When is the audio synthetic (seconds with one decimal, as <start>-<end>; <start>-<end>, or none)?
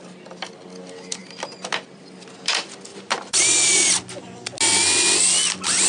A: 2.9-3.7